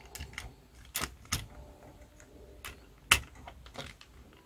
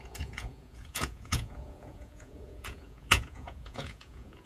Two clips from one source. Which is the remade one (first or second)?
second